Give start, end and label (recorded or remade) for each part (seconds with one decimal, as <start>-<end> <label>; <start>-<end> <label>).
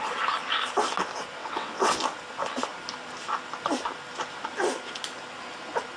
0.0-1.4 recorded; 1.4-2.0 remade; 2.0-6.0 recorded